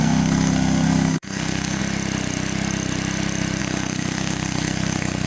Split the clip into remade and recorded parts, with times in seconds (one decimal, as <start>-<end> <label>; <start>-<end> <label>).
0.0-1.8 remade; 1.8-3.6 recorded; 3.6-5.3 remade